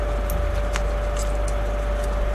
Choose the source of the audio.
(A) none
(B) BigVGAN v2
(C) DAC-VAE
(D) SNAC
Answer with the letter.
A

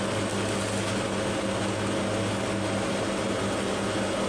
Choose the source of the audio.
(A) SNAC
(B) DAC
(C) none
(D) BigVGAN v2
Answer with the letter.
C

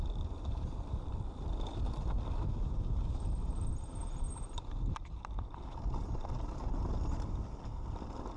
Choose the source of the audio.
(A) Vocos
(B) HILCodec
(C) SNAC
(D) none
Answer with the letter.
D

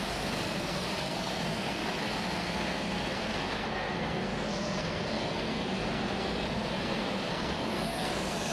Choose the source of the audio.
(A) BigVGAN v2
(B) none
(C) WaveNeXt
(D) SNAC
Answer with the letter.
D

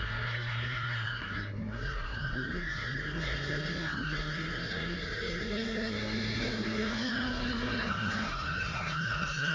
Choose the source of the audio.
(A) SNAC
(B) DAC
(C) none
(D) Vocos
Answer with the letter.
A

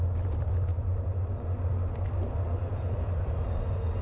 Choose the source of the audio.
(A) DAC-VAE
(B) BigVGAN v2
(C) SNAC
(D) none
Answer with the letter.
D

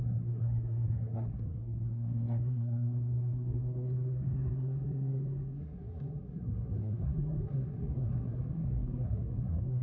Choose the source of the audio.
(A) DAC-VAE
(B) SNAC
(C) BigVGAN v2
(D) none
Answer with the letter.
B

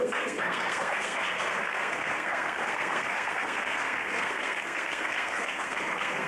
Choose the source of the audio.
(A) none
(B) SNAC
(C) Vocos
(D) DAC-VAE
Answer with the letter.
B